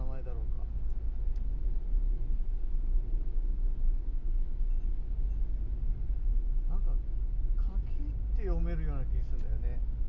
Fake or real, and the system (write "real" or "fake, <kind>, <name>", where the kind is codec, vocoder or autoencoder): real